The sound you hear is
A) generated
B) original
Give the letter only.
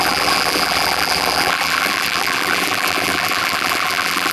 A